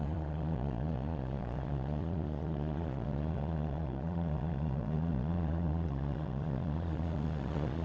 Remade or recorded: remade